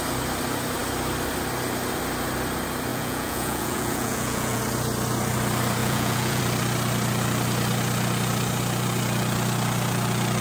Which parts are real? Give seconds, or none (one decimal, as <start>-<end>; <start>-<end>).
0.0-2.9; 4.6-5.8; 6.4-10.4